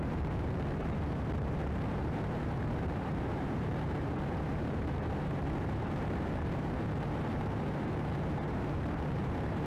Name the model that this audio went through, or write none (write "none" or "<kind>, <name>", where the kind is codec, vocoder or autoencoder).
vocoder, BigVGAN v2